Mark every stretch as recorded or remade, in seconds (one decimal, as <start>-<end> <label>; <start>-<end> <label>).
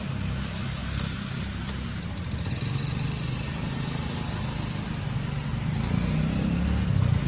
0.0-7.3 recorded